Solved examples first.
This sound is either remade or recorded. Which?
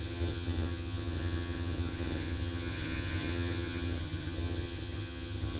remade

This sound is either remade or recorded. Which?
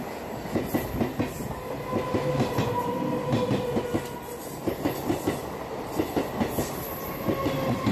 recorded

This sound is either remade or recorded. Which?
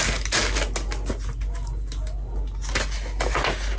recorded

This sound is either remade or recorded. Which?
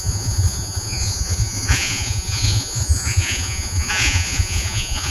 remade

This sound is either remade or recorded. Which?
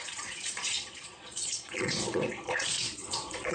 remade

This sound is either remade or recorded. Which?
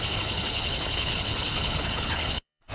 remade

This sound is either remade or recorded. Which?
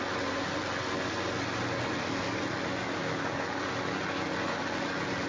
recorded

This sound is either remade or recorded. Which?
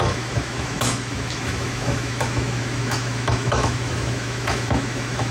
remade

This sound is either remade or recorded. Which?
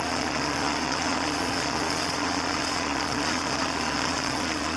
remade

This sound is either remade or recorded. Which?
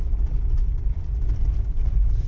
recorded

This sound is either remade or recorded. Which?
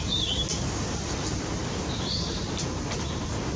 recorded